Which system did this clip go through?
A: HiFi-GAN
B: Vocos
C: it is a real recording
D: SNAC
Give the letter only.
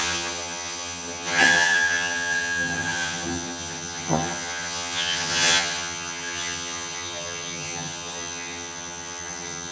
A